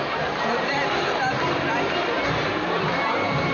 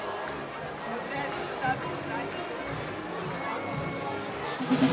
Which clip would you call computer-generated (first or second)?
first